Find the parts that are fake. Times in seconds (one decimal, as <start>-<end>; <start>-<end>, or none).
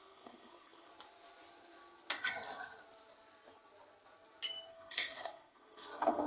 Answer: 0.0-0.9; 4.7-6.3